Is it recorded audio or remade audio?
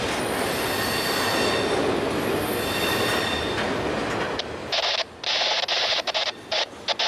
recorded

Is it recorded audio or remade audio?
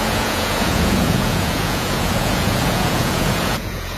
remade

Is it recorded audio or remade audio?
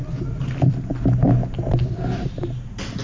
recorded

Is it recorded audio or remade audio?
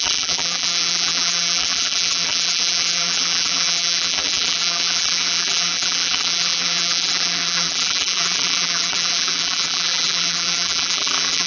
remade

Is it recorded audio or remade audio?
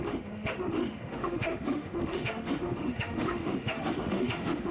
remade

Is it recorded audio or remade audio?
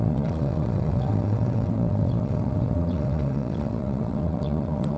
remade